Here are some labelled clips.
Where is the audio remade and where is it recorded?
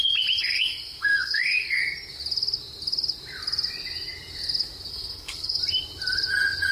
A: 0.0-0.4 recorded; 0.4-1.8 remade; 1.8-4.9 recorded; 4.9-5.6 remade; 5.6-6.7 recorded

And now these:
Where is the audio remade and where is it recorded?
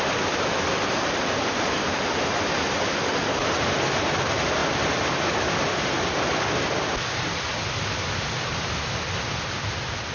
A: 0.0-10.1 recorded